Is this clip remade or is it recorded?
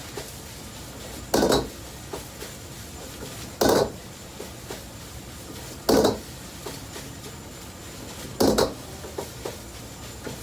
recorded